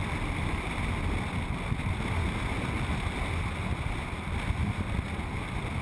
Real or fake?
real